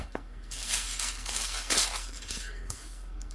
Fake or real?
fake